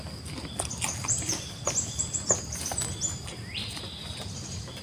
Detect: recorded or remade recorded